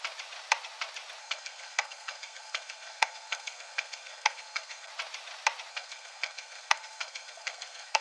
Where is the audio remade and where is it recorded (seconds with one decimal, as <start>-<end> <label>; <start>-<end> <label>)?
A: 0.0-1.2 recorded; 1.2-4.9 remade; 4.9-5.7 recorded; 5.7-8.0 remade